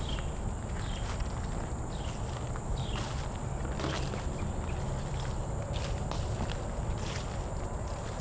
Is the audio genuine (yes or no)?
yes